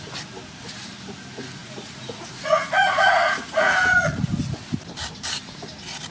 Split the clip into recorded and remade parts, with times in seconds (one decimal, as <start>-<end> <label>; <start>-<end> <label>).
0.0-1.6 recorded; 1.6-4.3 remade; 4.3-6.1 recorded